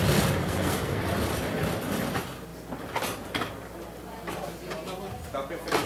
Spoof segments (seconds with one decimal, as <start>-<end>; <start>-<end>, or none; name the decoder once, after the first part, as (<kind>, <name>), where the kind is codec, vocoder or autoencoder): 0.4-1.0 (codec, SNAC)